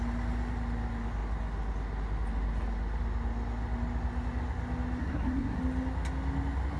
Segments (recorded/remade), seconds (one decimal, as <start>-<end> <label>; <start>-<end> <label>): 0.0-5.0 recorded; 5.0-5.6 remade; 5.6-6.8 recorded